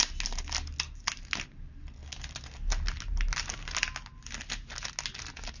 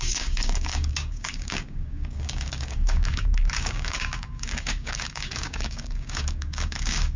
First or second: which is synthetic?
second